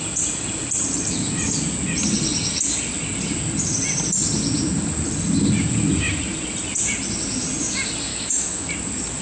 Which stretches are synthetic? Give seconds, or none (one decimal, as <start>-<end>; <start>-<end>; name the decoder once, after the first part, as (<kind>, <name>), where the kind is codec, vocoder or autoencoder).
8.1-8.7 (autoencoder, DAC-VAE)

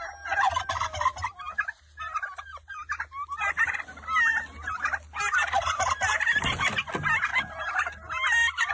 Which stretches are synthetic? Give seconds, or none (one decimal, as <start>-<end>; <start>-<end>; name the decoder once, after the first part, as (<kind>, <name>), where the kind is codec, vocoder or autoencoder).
none

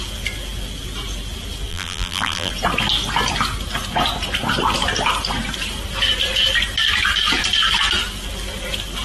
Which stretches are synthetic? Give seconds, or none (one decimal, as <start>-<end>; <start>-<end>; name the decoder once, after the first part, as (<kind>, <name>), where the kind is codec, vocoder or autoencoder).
1.7-2.5 (vocoder, BigVGAN v2)